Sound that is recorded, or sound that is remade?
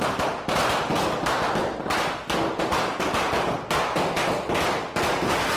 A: recorded